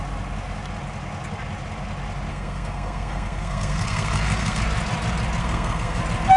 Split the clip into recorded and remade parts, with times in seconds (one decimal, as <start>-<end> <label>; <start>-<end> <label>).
0.0-2.3 recorded; 2.3-4.6 remade; 4.6-5.4 recorded; 5.4-6.0 remade; 6.0-6.4 recorded